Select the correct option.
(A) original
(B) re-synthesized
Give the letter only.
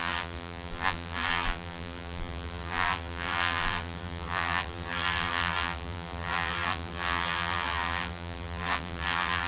B